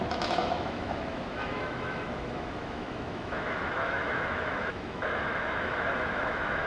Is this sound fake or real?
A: fake